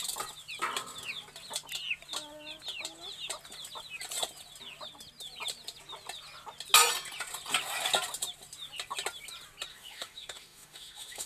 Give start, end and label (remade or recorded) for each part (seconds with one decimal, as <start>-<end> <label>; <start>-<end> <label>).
0.0-9.7 recorded; 9.7-11.3 remade